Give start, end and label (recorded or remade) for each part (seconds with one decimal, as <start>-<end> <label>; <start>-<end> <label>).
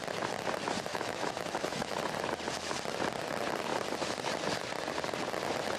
0.0-0.9 recorded; 0.9-2.0 remade; 2.0-5.8 recorded